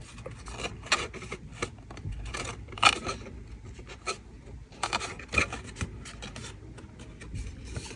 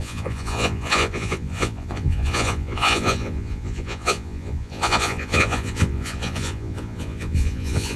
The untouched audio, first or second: first